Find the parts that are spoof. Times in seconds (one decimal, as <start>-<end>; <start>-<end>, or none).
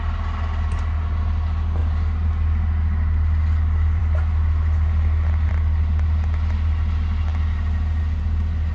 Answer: none